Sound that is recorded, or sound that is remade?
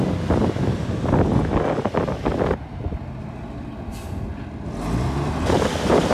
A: recorded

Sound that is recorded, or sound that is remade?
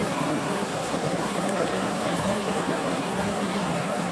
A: remade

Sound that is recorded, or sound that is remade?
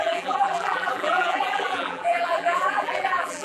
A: remade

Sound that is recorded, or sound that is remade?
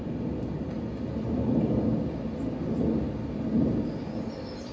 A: recorded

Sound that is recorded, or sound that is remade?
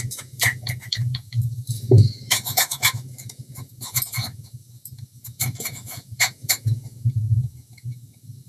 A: remade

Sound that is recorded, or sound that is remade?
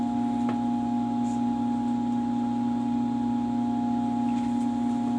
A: recorded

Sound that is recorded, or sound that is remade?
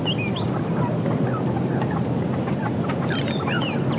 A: recorded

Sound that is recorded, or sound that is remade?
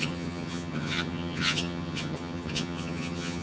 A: remade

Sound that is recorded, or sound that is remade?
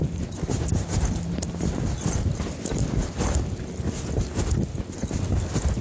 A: recorded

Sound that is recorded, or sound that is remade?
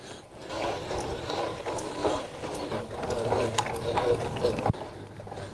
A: recorded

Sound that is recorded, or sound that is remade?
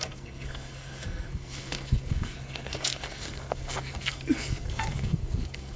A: remade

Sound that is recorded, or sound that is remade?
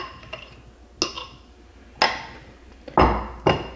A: recorded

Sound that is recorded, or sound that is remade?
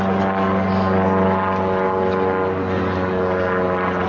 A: recorded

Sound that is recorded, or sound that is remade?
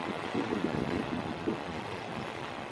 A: remade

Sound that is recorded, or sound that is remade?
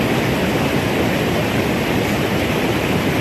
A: recorded